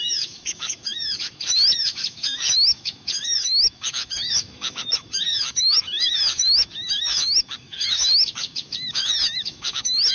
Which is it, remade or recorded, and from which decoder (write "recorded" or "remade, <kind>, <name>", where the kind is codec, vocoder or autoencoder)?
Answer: remade, autoencoder, DAC-VAE